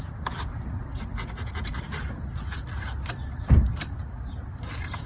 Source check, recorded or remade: recorded